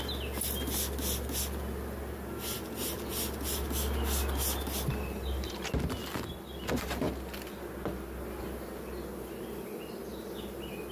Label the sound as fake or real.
real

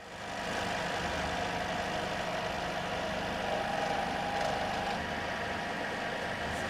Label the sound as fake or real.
real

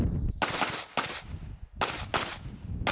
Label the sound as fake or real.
real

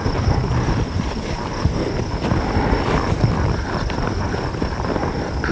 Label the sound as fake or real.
real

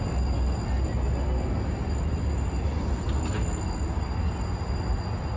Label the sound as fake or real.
real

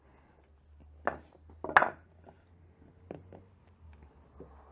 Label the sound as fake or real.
real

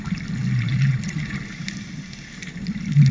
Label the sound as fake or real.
real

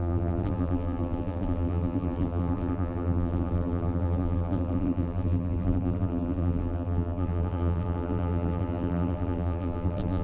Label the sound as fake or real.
fake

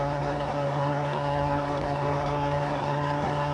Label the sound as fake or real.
fake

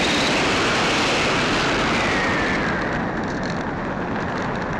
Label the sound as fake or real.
real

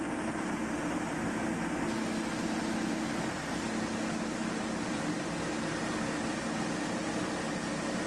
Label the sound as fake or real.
real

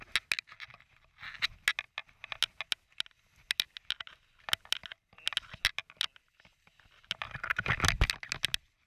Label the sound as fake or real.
real